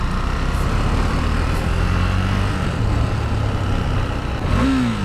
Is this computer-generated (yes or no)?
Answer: no